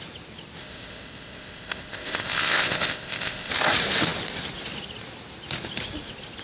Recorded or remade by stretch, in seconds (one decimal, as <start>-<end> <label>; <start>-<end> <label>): 0.0-0.6 recorded; 0.6-3.5 remade; 3.5-6.4 recorded